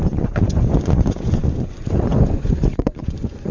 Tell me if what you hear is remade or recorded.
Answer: remade